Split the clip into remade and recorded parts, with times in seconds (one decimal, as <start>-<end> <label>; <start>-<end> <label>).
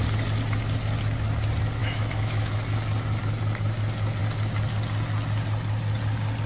0.0-1.8 recorded; 1.8-2.5 remade; 2.5-6.5 recorded